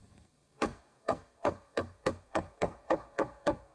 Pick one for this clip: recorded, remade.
remade